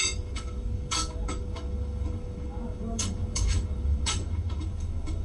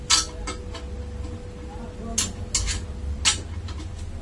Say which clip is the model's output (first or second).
first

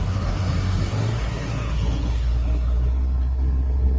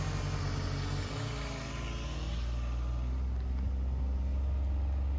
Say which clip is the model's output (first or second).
first